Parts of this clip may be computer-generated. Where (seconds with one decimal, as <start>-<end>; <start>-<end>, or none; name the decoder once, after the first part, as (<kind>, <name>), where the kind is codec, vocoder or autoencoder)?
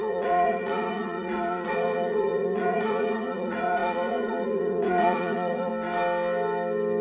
0.0-5.7 (vocoder, Vocos)